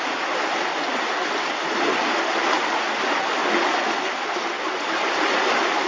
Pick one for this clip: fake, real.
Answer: real